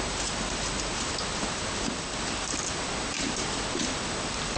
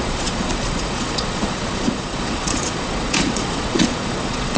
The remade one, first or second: second